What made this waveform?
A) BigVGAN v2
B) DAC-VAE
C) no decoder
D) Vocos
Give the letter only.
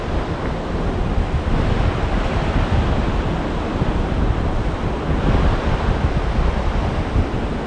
C